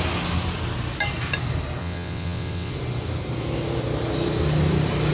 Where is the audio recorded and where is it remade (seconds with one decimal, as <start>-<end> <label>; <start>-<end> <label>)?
0.0-1.8 recorded; 1.8-2.7 remade; 2.7-5.1 recorded